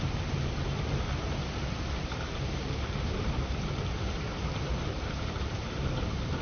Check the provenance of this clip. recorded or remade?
remade